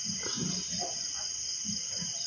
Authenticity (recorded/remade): recorded